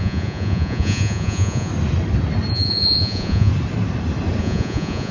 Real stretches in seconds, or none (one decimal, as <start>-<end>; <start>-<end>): 1.7-2.5; 3.5-4.4